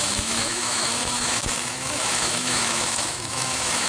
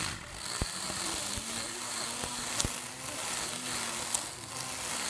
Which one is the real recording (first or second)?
second